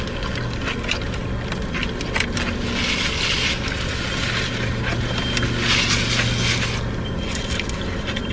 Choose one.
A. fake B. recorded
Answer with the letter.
B